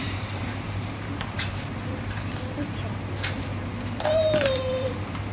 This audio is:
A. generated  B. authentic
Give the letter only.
A